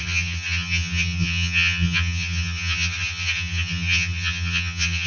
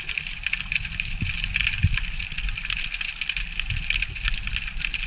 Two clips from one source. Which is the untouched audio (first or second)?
second